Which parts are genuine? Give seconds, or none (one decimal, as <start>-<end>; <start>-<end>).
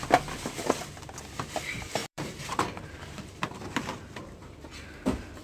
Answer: 0.0-2.0; 4.2-5.4